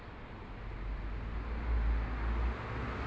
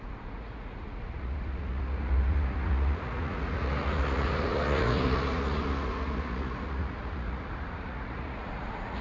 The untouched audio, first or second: first